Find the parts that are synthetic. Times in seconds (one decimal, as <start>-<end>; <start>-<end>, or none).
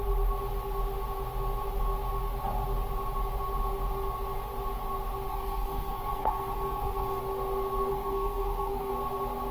5.3-7.2; 7.9-8.9